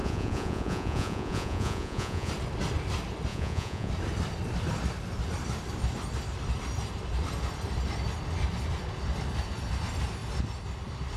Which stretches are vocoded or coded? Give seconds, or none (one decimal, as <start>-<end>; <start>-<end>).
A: 0.0-2.3; 3.3-3.9